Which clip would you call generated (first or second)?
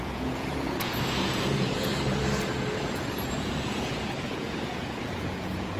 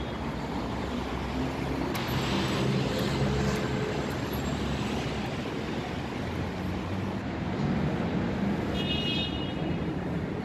first